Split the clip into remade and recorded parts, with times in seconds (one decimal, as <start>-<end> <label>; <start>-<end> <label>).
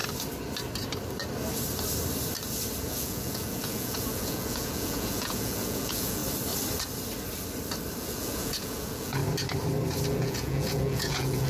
0.0-2.8 recorded; 2.8-6.2 remade; 6.2-8.0 recorded; 8.0-9.2 remade; 9.2-10.1 recorded; 10.1-11.5 remade